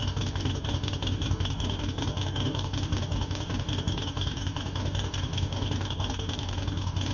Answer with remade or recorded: remade